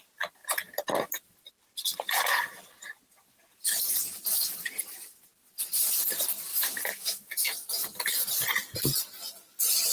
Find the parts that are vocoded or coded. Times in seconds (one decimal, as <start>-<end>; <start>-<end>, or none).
6.5-7.3